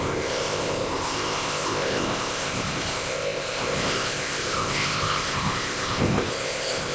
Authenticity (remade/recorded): remade